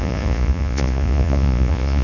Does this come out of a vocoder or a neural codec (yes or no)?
yes